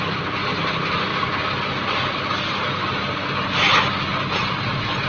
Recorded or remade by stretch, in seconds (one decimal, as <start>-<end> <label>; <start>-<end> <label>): 0.0-1.1 remade; 1.1-4.2 recorded; 4.2-5.1 remade